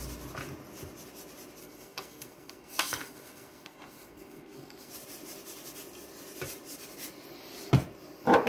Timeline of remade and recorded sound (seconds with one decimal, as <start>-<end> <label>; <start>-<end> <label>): 0.0-1.6 recorded; 1.6-4.9 remade; 4.9-8.5 recorded

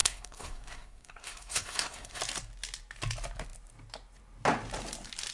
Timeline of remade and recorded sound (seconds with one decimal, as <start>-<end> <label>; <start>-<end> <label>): 0.0-2.2 remade; 2.2-5.3 recorded